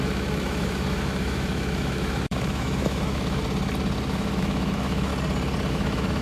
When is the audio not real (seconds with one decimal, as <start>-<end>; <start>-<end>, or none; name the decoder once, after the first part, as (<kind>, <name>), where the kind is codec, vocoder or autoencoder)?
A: 0.0-3.4 (autoencoder, DAC-VAE); 4.1-5.1; 5.7-6.2